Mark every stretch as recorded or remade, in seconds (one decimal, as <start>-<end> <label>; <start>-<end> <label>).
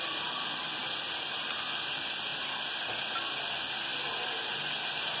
0.0-5.2 recorded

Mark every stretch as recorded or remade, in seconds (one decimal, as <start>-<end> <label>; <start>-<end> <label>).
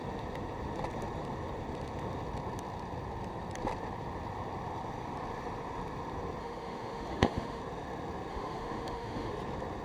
0.0-6.4 recorded; 6.4-7.6 remade; 7.6-8.3 recorded; 8.3-9.3 remade; 9.3-9.8 recorded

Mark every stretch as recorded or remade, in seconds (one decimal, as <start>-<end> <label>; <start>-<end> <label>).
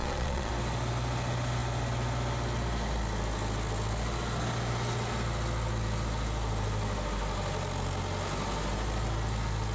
0.0-0.5 remade; 0.5-9.7 recorded